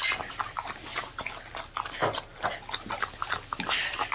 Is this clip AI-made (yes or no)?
no